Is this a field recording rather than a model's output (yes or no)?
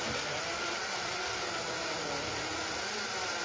yes